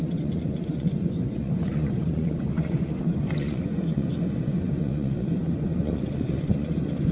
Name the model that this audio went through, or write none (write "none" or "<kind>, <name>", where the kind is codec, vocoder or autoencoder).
vocoder, Vocos